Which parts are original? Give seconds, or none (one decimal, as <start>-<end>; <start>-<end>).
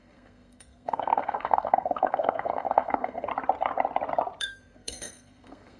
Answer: 3.3-4.4